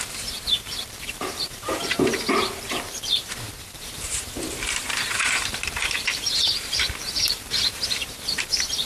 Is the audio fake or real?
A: fake